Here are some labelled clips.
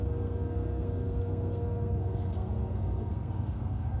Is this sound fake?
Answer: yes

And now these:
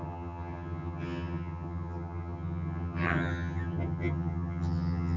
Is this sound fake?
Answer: yes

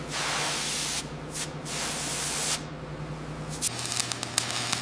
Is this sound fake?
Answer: no